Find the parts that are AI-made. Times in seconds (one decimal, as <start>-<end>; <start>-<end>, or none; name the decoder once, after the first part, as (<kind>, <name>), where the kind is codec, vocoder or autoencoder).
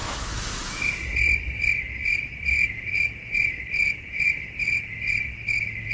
0.0-0.9 (autoencoder, DAC-VAE)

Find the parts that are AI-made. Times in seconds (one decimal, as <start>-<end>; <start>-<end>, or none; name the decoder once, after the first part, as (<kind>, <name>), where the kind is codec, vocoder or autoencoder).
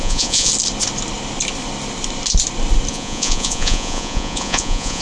0.0-0.5 (vocoder, Vocos); 2.9-5.0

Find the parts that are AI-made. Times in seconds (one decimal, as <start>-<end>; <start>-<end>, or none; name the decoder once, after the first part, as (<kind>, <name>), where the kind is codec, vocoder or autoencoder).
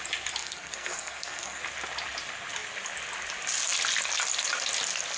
0.4-1.6 (codec, SNAC)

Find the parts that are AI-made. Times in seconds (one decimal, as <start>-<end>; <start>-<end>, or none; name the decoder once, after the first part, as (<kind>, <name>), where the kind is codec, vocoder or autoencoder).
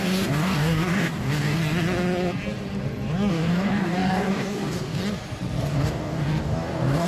0.0-1.6 (codec, DAC); 3.3-5.0; 5.7-7.1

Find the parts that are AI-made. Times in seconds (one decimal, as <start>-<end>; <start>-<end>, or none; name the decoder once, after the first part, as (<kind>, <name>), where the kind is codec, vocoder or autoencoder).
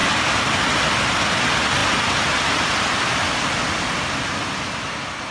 none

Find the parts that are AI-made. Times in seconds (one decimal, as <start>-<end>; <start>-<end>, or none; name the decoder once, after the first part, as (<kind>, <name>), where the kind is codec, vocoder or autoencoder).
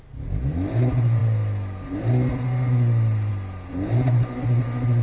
none